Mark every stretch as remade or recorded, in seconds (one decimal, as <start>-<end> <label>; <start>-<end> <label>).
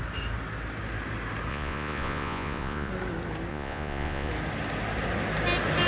0.0-1.5 recorded; 1.5-2.9 remade; 2.9-3.5 recorded; 3.5-4.3 remade; 4.3-5.9 recorded